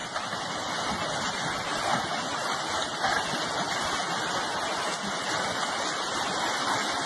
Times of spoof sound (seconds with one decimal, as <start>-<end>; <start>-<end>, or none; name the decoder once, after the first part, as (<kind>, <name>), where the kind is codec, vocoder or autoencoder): none